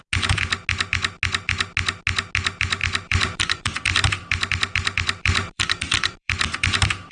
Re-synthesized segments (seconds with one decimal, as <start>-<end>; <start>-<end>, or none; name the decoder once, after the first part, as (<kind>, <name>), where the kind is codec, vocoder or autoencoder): 2.8-7.1 (vocoder, BigVGAN v2)